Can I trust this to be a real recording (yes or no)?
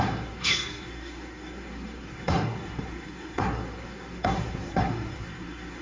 no